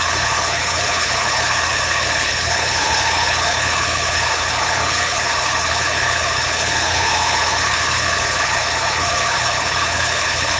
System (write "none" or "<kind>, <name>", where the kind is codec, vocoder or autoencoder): codec, HILCodec